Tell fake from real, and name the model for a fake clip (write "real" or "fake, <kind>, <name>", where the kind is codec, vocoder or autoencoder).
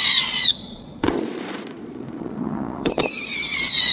fake, vocoder, Vocos